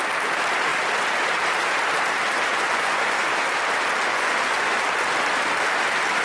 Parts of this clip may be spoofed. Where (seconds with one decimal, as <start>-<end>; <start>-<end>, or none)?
2.5-3.3; 4.1-4.8